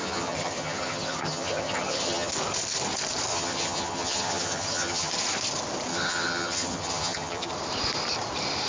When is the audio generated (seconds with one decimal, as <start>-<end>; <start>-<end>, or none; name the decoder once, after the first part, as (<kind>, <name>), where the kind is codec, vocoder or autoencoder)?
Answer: 0.0-2.3 (vocoder, HiFi-GAN); 3.3-5.1; 5.9-7.5